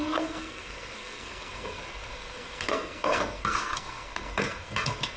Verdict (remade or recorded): remade